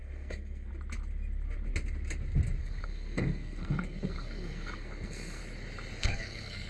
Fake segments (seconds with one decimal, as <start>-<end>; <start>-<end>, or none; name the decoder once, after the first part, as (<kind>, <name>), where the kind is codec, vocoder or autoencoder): 0.0-0.7 (codec, SNAC); 2.6-5.4; 6.0-6.7